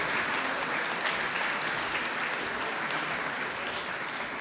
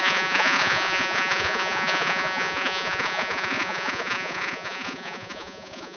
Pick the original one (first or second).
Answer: first